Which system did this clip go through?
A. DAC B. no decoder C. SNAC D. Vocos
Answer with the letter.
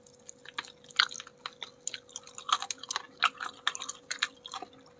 B